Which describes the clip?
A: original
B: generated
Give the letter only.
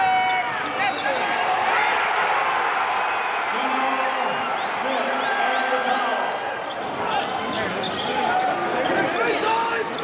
A